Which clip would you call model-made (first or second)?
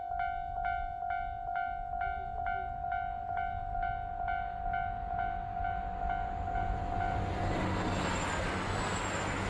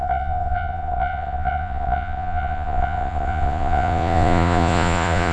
second